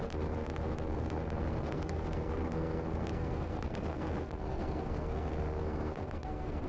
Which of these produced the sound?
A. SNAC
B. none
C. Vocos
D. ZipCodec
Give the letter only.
A